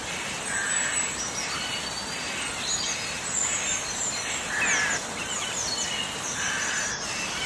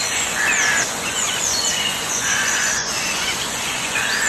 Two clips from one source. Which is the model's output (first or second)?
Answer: second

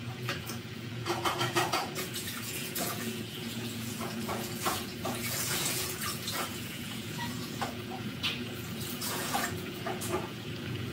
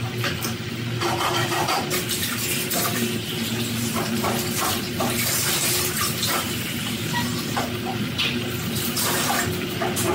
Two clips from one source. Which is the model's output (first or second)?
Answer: first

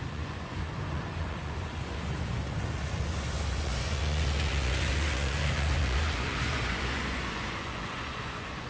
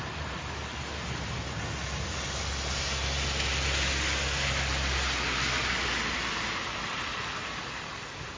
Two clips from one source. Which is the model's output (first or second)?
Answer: first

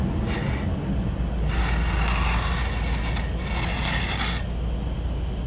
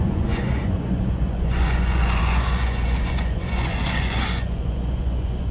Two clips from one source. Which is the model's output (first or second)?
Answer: second